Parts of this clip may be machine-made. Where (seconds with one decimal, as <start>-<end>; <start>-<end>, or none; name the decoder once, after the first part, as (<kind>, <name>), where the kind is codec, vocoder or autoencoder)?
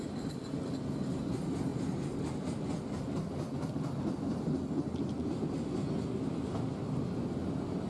none